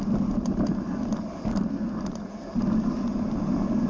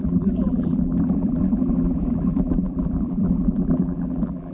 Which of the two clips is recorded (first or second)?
first